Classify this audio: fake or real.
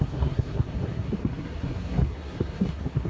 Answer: fake